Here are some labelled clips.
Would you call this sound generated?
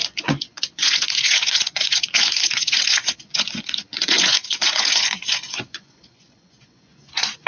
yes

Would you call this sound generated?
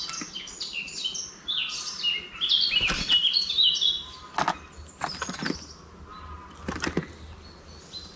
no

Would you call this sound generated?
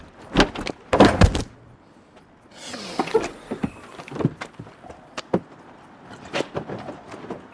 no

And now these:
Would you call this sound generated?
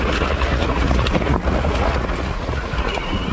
yes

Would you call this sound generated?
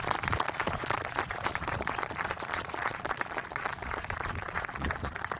yes